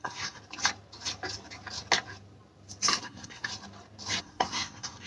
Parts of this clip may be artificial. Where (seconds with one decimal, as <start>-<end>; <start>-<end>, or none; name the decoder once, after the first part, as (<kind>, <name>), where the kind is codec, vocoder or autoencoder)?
0.0-0.4 (codec, SNAC); 3.0-3.5; 4.2-5.1